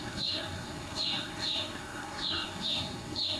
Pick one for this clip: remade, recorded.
remade